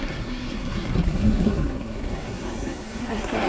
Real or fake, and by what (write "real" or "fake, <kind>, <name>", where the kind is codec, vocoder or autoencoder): fake, codec, SNAC